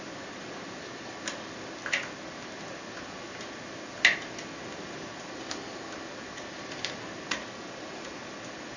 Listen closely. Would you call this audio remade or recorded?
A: recorded